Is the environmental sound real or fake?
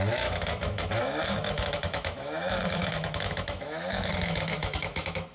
fake